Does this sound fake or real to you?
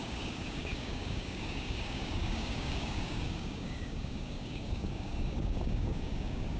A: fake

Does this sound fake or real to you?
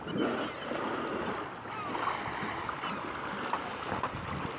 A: real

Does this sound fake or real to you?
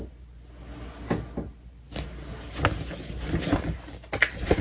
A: real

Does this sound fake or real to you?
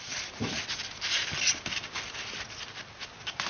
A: real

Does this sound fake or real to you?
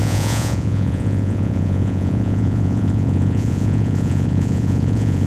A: fake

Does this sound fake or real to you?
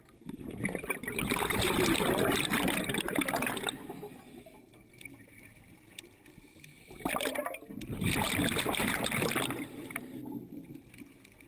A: real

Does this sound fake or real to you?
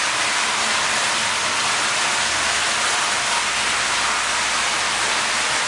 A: real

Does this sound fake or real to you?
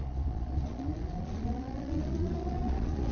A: fake